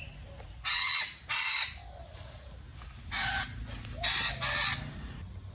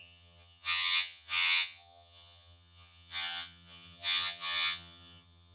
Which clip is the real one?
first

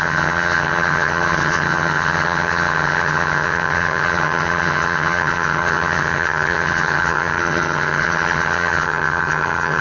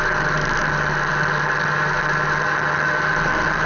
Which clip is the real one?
second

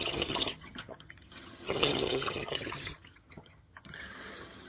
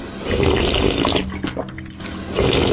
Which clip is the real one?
second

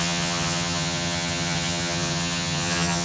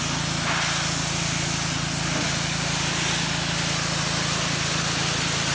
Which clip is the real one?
second